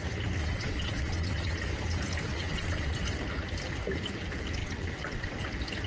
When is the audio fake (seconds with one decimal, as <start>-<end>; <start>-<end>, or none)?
0.4-1.6; 2.3-3.0; 4.6-5.4